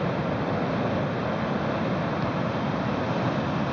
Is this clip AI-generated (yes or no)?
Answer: no